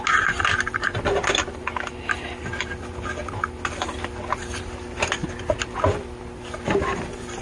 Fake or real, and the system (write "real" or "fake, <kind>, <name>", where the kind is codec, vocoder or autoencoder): real